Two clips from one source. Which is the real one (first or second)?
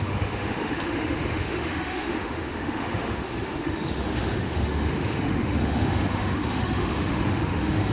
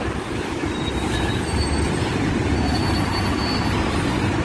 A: second